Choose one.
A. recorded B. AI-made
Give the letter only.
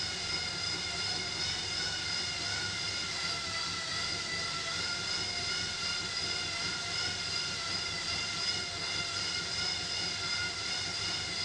A